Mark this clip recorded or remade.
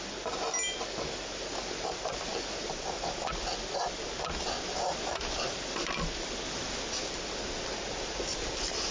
recorded